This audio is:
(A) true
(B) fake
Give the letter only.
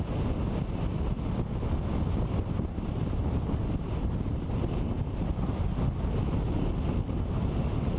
A